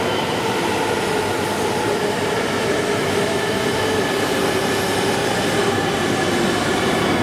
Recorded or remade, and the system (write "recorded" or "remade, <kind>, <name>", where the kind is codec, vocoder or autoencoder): recorded